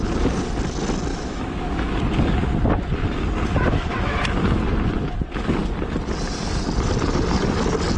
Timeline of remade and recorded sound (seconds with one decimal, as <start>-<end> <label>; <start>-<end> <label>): 0.0-1.1 recorded; 1.1-2.0 remade; 2.0-8.0 recorded